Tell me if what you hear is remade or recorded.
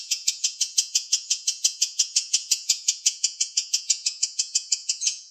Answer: remade